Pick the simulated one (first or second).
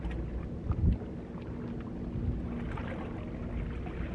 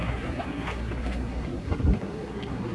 second